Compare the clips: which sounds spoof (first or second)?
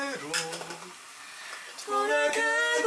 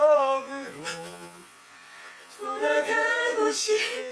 second